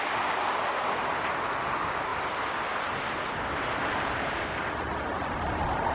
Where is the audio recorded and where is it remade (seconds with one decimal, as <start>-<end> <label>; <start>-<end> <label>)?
0.0-5.9 recorded